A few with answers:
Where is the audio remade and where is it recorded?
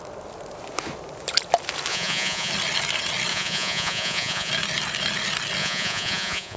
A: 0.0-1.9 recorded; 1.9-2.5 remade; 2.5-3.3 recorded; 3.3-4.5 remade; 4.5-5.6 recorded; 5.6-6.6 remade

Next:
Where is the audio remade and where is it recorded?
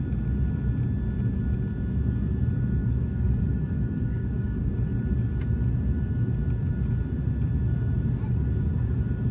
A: 0.0-2.8 recorded; 2.8-4.7 remade; 4.7-9.3 recorded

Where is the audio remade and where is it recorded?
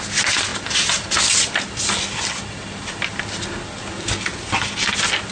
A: 0.0-5.3 recorded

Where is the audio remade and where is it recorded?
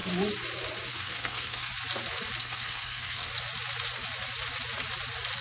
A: 0.0-0.9 recorded; 0.9-1.7 remade; 1.7-2.4 recorded; 2.4-3.3 remade; 3.3-5.4 recorded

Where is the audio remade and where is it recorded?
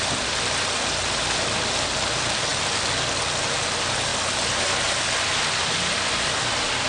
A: 0.0-6.9 recorded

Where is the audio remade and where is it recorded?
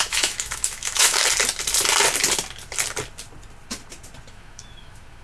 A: 0.0-1.2 remade; 1.2-4.3 recorded; 4.3-5.2 remade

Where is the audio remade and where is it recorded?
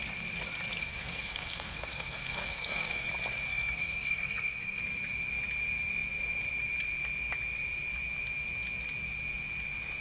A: 0.0-0.8 recorded; 0.8-3.1 remade; 3.1-3.5 recorded; 3.5-4.8 remade; 4.8-10.0 recorded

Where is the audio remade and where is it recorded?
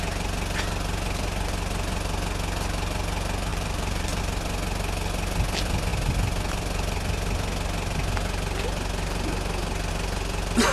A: 0.0-3.5 recorded; 3.5-4.2 remade; 4.2-10.7 recorded